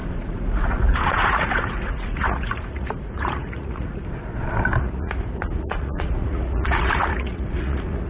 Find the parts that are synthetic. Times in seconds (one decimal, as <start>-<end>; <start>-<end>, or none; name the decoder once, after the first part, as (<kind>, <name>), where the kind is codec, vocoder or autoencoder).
0.0-4.0 (vocoder, Vocos); 4.8-8.1